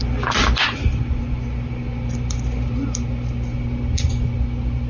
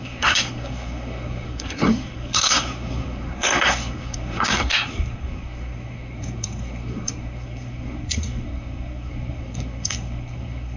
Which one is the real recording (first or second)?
first